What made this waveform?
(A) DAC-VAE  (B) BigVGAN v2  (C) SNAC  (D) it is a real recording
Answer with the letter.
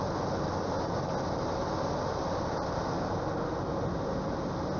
D